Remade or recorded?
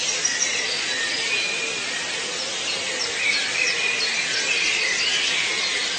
recorded